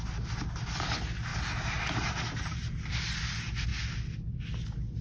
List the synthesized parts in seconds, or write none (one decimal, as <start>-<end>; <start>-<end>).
none